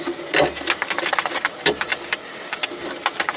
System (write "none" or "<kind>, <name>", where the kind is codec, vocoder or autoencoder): none